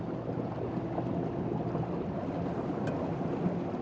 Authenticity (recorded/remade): recorded